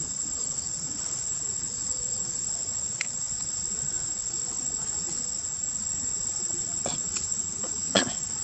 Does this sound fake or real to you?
fake